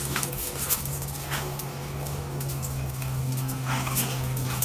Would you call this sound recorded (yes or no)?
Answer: no